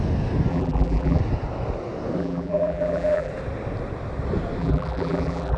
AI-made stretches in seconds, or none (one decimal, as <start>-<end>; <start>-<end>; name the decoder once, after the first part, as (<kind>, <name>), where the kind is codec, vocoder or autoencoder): 0.5-1.2 (vocoder, BigVGAN v2); 2.2-3.3; 4.6-5.6